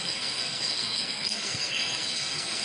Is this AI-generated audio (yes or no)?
yes